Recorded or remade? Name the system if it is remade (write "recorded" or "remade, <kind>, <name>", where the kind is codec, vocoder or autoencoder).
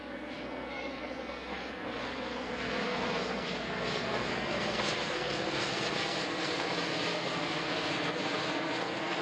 remade, codec, SNAC